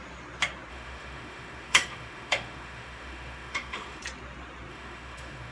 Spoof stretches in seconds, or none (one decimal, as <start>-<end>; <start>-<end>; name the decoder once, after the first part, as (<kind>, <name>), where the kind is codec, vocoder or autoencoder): 0.7-4.0 (autoencoder, DAC-VAE); 4.7-5.5